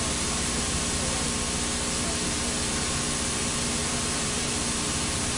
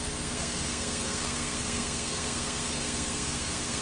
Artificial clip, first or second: second